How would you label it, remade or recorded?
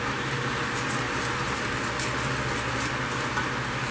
recorded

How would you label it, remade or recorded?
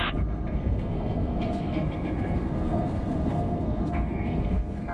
remade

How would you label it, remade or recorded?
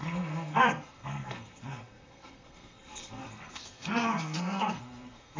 remade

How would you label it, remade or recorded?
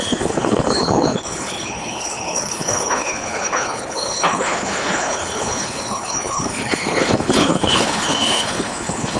remade